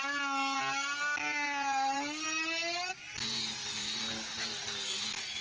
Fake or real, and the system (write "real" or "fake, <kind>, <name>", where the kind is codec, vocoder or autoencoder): real